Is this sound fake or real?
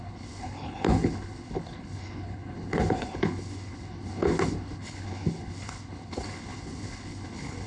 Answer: fake